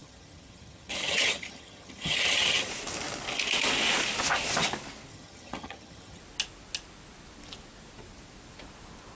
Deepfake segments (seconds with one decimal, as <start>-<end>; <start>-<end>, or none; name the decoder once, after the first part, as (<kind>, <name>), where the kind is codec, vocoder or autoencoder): 0.0-2.7 (vocoder, HiFi-GAN); 5.1-6.2